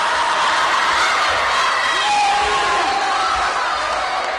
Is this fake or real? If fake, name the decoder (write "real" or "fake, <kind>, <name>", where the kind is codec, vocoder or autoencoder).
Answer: real